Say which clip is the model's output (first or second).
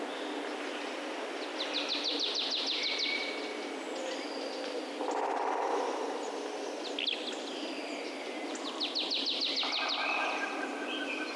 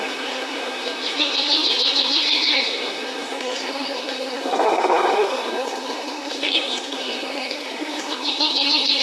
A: second